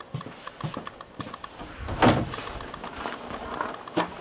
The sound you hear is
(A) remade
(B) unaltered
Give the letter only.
B